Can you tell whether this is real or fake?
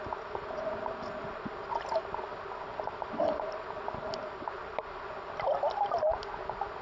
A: real